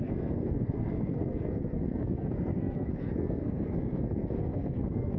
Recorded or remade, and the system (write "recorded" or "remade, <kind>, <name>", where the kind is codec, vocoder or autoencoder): remade, codec, SNAC